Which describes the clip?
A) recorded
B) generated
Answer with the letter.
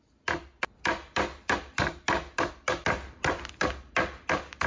A